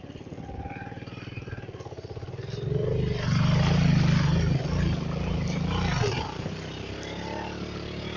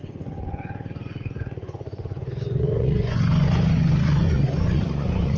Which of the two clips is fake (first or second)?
second